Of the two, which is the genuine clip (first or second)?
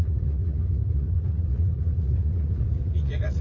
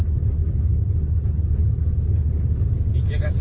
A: second